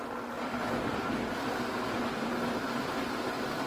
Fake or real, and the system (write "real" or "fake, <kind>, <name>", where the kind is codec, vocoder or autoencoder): real